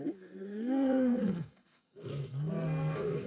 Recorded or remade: remade